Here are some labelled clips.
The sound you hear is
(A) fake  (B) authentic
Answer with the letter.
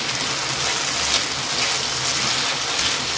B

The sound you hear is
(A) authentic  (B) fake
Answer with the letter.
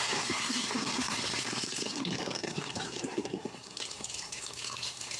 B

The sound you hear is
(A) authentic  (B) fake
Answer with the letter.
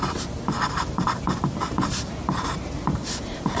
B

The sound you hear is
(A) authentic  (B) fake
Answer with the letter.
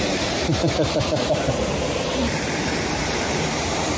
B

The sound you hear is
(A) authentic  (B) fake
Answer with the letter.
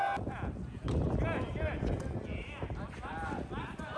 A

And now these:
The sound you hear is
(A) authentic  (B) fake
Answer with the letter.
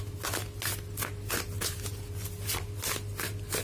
A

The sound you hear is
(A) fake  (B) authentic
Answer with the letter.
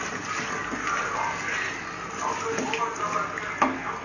B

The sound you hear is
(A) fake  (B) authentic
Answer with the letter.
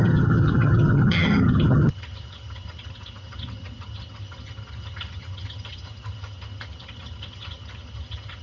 A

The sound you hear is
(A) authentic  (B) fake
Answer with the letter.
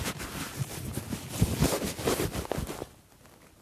A